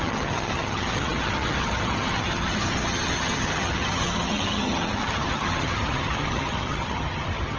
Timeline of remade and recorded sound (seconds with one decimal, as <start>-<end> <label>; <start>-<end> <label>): 0.0-7.6 remade